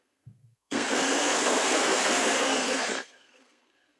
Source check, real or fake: fake